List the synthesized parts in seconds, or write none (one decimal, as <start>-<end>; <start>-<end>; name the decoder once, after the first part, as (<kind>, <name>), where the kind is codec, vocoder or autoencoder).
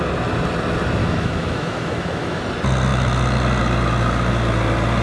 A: 1.0-2.4 (autoencoder, DAC-VAE)